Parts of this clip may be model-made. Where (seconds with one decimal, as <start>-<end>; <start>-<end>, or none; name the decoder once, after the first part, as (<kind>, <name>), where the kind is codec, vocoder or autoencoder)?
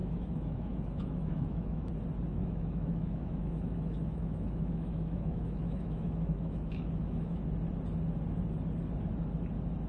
0.0-1.9 (autoencoder, DAC-VAE); 2.3-7.4